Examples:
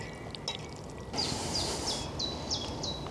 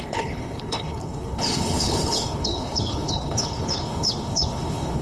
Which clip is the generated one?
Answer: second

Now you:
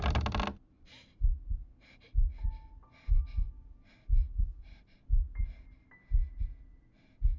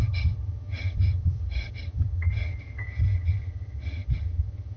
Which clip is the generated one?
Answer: second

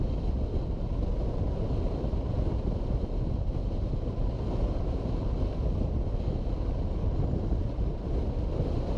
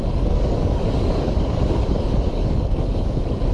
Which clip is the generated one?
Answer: second